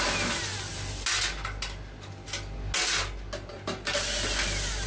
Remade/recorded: recorded